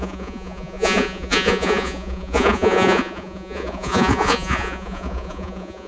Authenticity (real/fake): fake